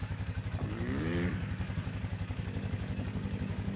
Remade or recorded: remade